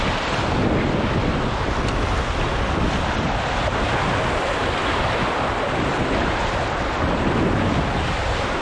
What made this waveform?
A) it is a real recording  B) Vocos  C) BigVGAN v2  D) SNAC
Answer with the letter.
A